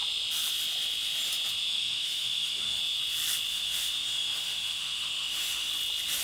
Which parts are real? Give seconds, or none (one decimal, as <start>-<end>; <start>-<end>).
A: 0.0-1.7; 2.8-3.5; 5.7-6.2